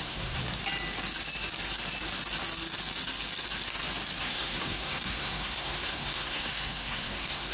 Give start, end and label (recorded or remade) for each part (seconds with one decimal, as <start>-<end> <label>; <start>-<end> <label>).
0.0-0.4 remade; 0.4-4.2 recorded; 4.2-7.5 remade